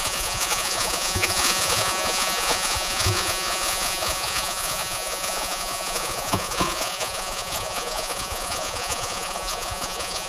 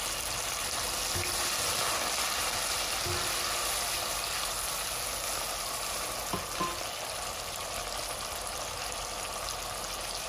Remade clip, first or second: first